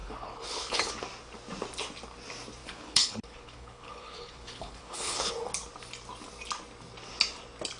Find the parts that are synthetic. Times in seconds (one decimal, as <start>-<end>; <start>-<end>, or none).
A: 0.0-0.9; 2.6-5.3